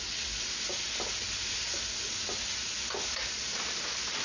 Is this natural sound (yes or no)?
yes